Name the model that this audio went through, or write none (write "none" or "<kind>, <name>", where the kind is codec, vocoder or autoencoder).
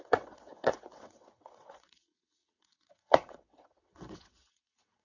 vocoder, WaveNeXt